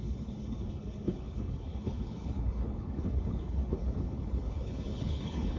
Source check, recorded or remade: remade